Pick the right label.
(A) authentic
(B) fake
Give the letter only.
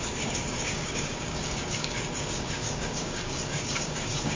B